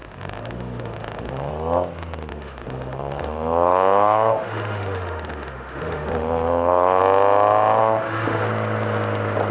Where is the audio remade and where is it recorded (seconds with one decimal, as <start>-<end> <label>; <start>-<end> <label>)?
0.0-1.5 remade; 1.5-2.3 recorded; 2.3-7.0 remade; 7.0-7.8 recorded; 7.8-8.4 remade; 8.4-9.5 recorded